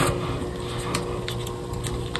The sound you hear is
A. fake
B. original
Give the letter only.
B